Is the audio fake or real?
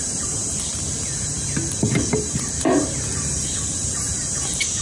fake